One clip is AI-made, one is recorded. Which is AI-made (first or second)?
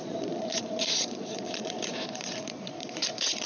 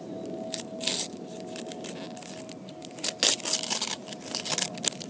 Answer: first